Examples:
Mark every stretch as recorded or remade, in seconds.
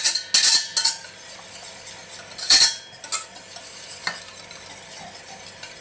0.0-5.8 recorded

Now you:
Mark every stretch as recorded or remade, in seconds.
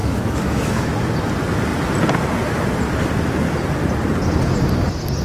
0.0-0.9 remade; 0.9-5.2 recorded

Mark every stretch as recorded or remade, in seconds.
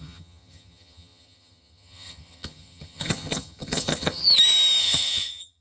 0.0-4.2 remade; 4.2-4.8 recorded; 4.8-5.6 remade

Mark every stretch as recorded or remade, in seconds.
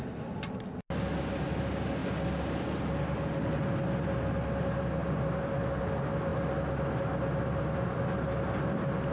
0.0-9.1 recorded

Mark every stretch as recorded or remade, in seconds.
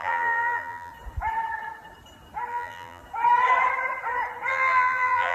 0.0-0.9 remade; 0.9-2.5 recorded; 2.5-3.0 remade; 3.0-4.5 recorded; 4.5-5.3 remade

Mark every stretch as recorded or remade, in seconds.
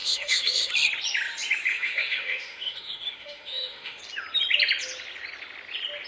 0.0-0.7 remade; 0.7-1.7 recorded; 1.7-4.0 remade; 4.0-6.1 recorded